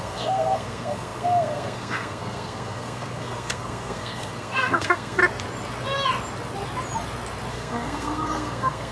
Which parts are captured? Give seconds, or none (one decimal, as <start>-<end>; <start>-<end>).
5.2-7.5